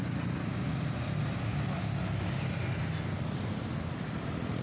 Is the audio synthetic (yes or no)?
no